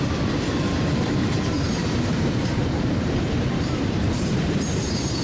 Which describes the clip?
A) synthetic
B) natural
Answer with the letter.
A